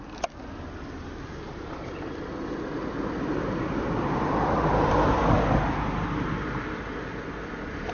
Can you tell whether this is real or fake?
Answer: fake